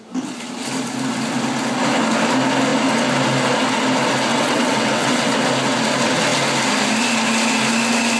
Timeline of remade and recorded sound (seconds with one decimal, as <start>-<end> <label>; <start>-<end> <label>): 0.0-4.3 recorded; 4.3-5.3 remade; 5.3-8.2 recorded